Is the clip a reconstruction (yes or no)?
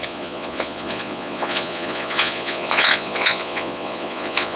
yes